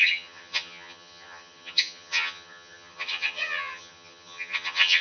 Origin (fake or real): fake